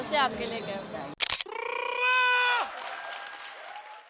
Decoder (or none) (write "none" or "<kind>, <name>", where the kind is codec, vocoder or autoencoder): none